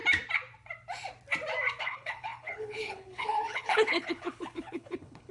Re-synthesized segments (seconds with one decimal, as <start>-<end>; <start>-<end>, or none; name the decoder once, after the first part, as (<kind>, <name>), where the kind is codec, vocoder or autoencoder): 1.8-5.3 (codec, HILCodec)